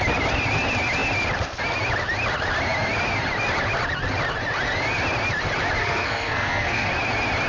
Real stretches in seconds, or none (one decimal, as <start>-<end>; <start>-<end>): 0.0-5.8; 6.9-7.5